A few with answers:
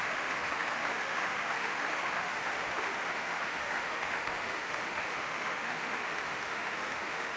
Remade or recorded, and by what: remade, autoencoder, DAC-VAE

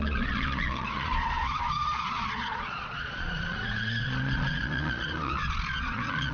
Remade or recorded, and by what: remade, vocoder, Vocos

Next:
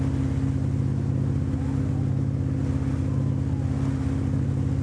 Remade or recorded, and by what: recorded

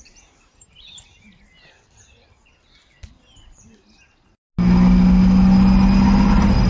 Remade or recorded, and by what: recorded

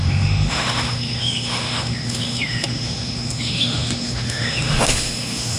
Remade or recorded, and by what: remade, autoencoder, DAC-VAE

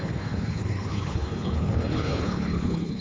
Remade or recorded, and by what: remade, codec, HILCodec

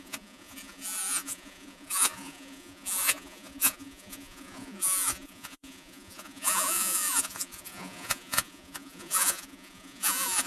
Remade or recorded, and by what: remade, vocoder, Vocos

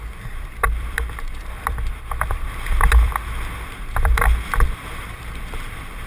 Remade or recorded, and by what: remade, vocoder, BigVGAN v2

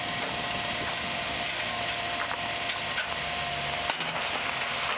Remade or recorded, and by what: recorded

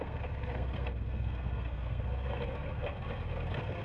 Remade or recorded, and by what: remade, codec, SNAC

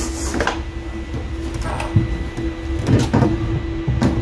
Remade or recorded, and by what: recorded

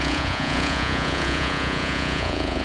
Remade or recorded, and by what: remade, vocoder, Vocos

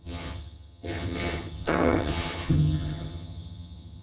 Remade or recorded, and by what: remade, vocoder, HiFi-GAN